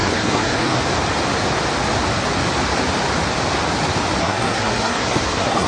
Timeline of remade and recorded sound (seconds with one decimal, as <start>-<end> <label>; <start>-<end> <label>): 0.0-0.8 remade; 0.8-4.2 recorded; 4.2-5.7 remade